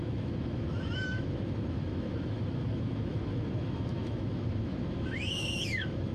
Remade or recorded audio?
remade